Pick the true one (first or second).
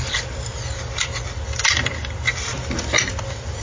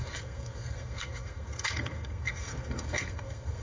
first